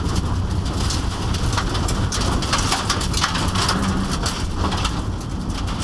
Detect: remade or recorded recorded